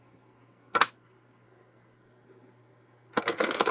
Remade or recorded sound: remade